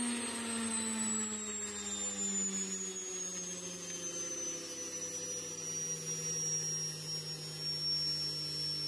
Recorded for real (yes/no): yes